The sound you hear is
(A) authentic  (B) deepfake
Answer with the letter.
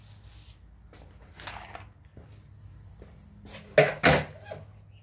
A